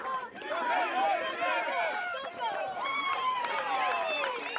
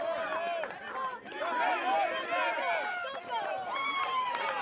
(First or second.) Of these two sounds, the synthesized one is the first